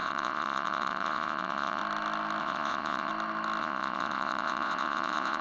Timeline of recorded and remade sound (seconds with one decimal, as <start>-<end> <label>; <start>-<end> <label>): 0.0-1.8 remade; 1.8-2.4 recorded; 2.4-3.1 remade; 3.1-3.6 recorded; 3.6-5.4 remade